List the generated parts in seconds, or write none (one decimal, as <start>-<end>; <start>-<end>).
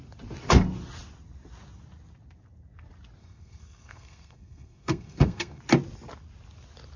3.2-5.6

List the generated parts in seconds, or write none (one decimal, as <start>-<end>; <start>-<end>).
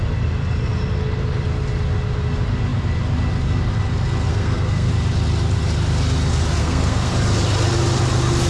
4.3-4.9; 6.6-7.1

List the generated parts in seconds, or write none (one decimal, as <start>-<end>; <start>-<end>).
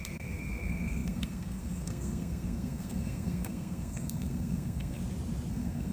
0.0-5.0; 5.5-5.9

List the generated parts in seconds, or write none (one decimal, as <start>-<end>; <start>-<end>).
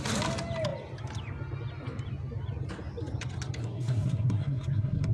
3.6-5.1